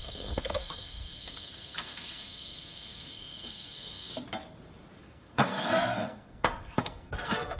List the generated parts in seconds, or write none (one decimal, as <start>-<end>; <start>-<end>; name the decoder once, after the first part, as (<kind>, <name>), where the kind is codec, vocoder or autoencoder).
0.0-4.1 (codec, SNAC); 5.0-7.6